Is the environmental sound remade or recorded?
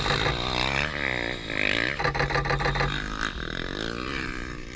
recorded